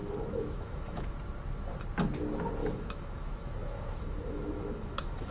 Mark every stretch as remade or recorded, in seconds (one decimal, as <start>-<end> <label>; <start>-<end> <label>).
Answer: 0.0-1.1 remade; 1.1-2.6 recorded; 2.6-5.3 remade